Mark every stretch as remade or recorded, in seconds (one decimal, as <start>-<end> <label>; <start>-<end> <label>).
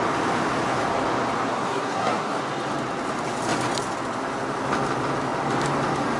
0.0-1.5 recorded; 1.5-2.4 remade; 2.4-6.2 recorded